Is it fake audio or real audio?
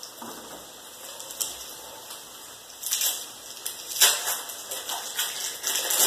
real